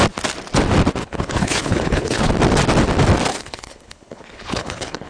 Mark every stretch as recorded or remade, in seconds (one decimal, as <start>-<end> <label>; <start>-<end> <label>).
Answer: 0.0-1.0 recorded; 1.0-2.3 remade; 2.3-3.3 recorded; 3.3-5.1 remade